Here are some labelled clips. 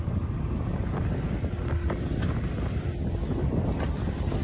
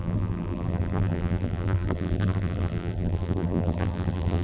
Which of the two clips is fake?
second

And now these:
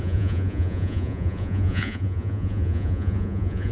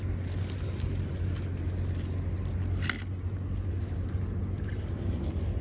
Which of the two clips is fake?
first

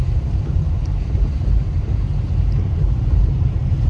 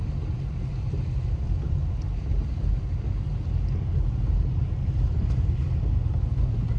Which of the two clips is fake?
first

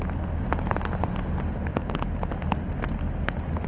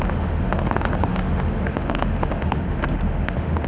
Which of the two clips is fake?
second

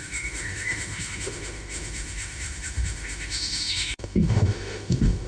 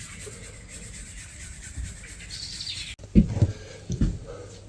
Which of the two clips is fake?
first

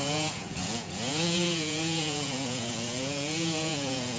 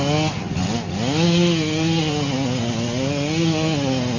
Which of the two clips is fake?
first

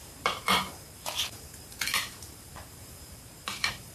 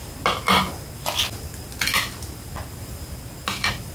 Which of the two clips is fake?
first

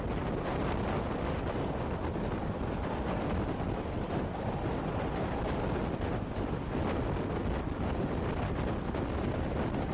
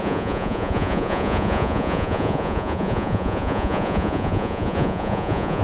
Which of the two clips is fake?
second